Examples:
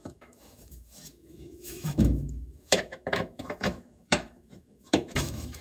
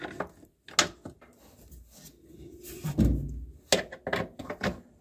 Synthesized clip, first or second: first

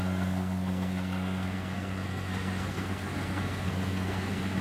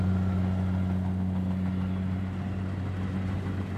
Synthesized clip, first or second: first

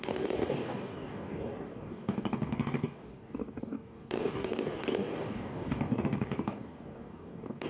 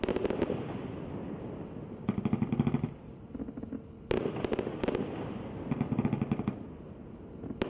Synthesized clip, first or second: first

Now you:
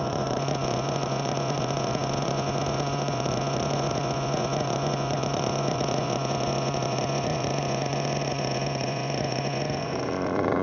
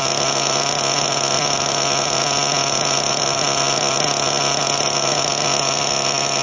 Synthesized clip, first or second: first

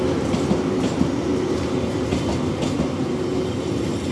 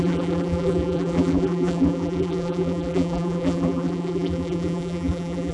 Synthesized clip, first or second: second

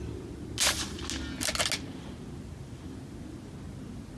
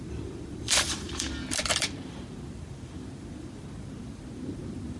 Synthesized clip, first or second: second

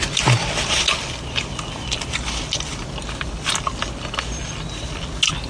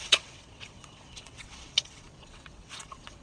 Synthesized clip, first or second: second